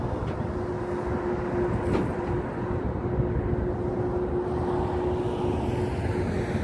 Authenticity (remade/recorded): recorded